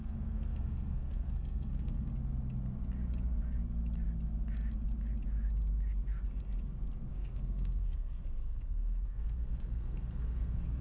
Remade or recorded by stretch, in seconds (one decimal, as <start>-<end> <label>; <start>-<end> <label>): 0.0-2.1 remade; 2.1-7.1 recorded; 7.1-10.8 remade